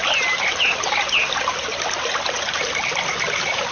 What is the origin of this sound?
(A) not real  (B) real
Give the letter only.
B